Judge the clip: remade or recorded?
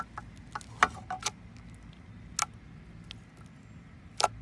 recorded